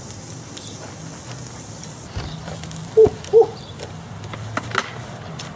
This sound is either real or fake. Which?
real